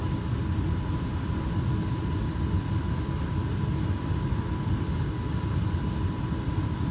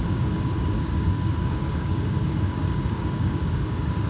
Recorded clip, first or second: first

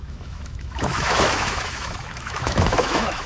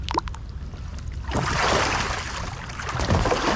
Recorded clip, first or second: second